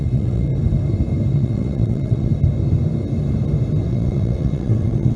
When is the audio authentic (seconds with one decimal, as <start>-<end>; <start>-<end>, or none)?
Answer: 0.5-1.3; 2.3-3.9